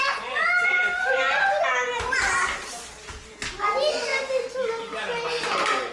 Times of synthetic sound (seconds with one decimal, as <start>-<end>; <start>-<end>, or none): none